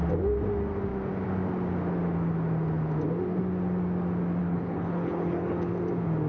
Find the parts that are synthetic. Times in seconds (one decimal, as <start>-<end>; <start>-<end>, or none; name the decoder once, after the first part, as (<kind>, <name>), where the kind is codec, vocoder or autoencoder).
4.4-5.7 (codec, HILCodec)